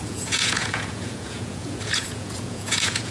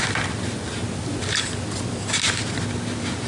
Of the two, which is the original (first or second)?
second